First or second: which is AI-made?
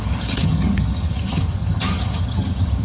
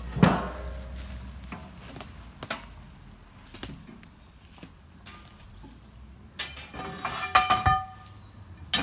first